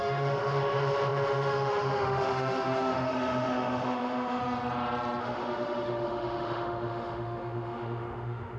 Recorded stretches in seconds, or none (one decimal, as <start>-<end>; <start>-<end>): 4.4-5.2

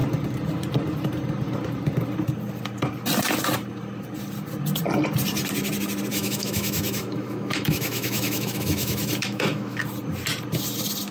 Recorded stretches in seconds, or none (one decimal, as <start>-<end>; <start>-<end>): 0.0-6.1; 9.8-11.1

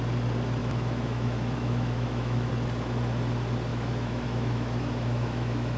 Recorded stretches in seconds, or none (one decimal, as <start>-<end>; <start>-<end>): 0.0-0.6; 2.5-3.7

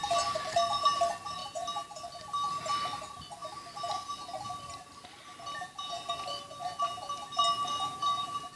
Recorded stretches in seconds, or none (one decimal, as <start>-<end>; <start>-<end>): 0.0-8.6

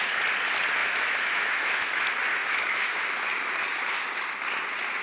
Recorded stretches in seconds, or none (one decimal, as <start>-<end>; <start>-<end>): 0.0-0.8; 2.0-2.4; 3.0-5.0

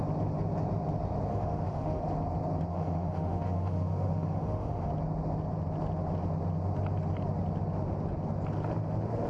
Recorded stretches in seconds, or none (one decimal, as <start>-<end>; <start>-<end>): 0.0-1.3; 2.0-2.7; 4.9-9.3

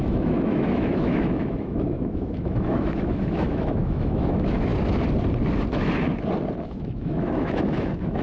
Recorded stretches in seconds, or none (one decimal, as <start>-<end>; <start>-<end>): 4.7-6.6